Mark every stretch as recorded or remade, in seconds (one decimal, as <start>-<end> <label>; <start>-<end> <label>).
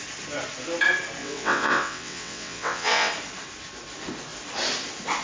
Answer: 0.0-1.2 recorded; 1.2-3.1 remade; 3.1-5.2 recorded